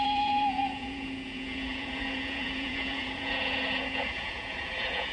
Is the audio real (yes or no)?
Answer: no